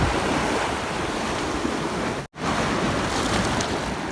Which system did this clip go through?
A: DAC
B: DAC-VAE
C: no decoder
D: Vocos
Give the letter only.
C